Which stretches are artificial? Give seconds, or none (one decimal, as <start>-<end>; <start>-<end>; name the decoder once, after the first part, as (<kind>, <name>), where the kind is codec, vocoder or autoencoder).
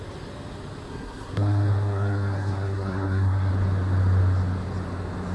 0.9-3.5 (codec, SNAC)